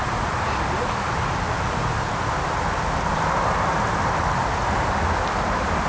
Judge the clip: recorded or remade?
recorded